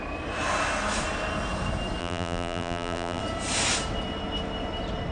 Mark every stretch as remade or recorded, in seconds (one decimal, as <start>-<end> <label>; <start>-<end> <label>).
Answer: 0.0-2.0 recorded; 2.0-3.2 remade; 3.2-5.1 recorded